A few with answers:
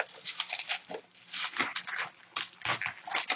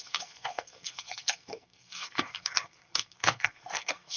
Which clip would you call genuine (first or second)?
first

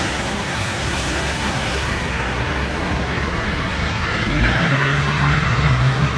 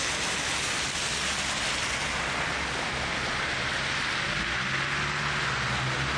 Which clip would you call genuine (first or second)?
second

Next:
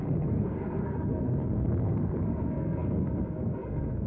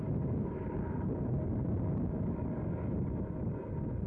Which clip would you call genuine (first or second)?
second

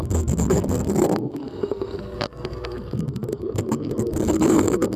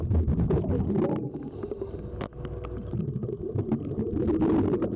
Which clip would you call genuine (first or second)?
second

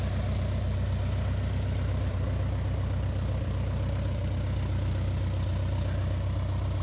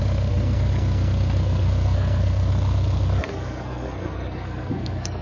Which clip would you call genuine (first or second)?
first